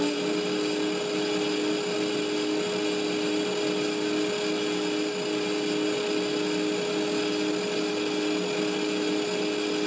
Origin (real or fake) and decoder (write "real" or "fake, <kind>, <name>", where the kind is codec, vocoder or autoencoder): real